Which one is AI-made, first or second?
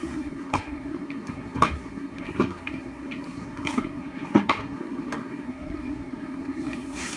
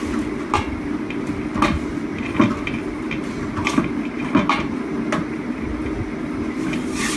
first